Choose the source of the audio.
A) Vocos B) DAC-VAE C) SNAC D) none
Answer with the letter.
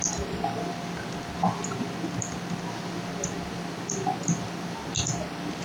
D